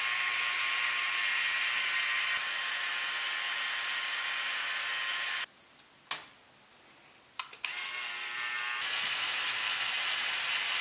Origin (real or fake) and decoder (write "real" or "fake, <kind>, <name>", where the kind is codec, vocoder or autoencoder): real